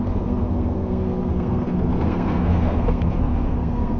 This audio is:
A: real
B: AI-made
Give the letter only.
B